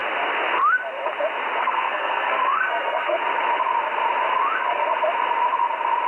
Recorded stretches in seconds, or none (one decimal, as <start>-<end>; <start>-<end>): 0.0-1.6; 3.2-6.1